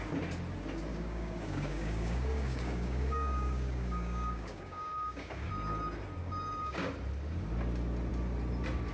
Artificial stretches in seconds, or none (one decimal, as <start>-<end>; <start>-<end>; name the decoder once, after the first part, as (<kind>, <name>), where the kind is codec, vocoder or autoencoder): 0.9-5.5 (codec, DAC); 6.2-6.9